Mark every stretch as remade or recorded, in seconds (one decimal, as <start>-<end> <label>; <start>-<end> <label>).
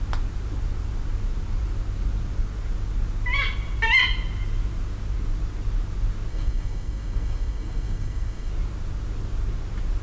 0.0-6.3 recorded; 6.3-8.5 remade; 8.5-10.0 recorded